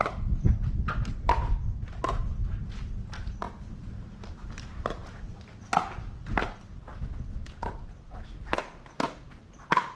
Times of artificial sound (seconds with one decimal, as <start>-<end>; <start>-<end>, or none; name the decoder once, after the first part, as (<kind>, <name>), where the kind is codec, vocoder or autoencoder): none

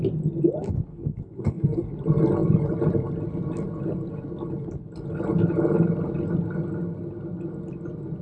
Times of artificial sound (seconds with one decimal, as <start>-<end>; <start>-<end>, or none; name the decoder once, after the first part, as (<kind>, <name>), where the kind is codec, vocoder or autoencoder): 0.9-1.9 (codec, SNAC)

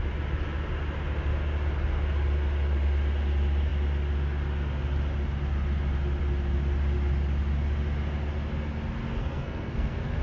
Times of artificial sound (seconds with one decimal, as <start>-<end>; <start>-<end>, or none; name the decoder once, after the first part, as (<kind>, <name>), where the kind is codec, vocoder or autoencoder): 9.2-10.2 (codec, SNAC)

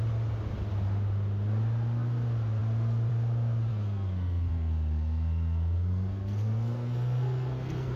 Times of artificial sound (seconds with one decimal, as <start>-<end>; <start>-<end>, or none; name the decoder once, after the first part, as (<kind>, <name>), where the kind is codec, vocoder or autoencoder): 3.7-8.0 (codec, SNAC)

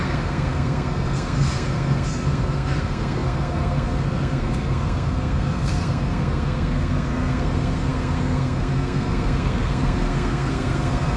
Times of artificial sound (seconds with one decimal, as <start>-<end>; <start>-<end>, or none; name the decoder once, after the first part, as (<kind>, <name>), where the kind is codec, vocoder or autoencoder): 0.0-11.2 (codec, SNAC)

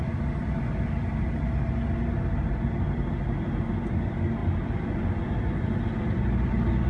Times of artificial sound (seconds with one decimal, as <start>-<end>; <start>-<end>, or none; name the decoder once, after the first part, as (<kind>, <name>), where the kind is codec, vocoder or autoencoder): none

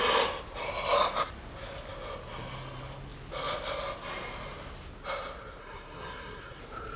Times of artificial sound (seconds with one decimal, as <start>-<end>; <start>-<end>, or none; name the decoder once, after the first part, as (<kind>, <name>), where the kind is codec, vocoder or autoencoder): 5.6-6.6 (codec, SNAC)